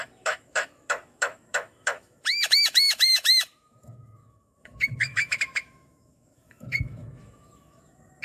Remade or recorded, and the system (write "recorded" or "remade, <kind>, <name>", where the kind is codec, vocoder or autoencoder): remade, autoencoder, DAC-VAE